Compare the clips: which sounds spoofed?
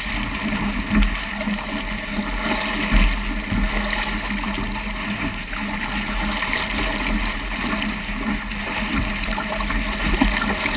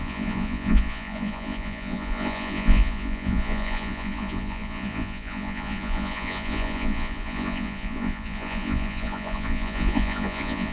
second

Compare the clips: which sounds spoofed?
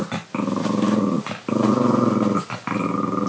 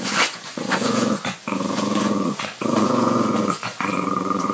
second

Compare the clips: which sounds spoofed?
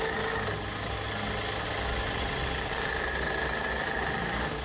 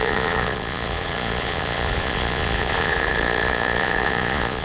second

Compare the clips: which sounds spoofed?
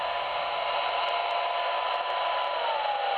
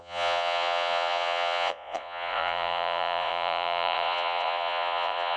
second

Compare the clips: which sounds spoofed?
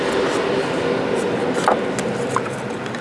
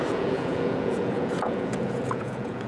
second